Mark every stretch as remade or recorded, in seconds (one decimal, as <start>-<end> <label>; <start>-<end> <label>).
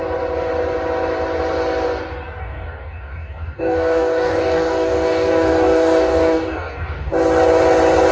0.0-2.4 recorded; 2.4-7.1 remade; 7.1-8.1 recorded